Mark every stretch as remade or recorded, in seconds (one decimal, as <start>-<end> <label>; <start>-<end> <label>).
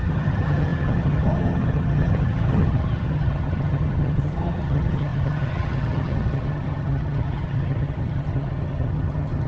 0.0-9.5 remade